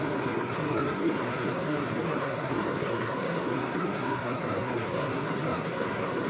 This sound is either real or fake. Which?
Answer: fake